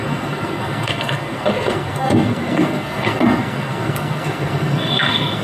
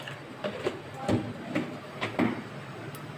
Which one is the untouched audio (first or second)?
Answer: second